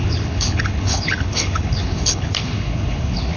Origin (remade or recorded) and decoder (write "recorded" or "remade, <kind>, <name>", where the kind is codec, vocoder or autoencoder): remade, codec, HILCodec